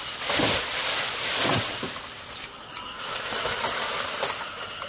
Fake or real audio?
real